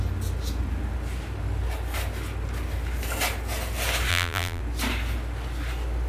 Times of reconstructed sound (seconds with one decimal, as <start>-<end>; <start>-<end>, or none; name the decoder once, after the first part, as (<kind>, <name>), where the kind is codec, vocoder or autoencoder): 4.1-4.6 (vocoder, BigVGAN v2)